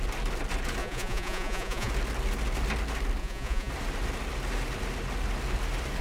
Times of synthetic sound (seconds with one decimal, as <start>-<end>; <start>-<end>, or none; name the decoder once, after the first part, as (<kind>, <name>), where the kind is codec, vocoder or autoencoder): 0.8-1.9 (vocoder, Vocos); 3.2-3.7